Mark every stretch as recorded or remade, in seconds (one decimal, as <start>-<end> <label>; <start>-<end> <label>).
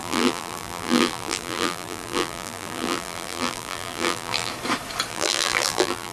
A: 0.0-4.5 remade; 4.5-5.1 recorded; 5.1-6.1 remade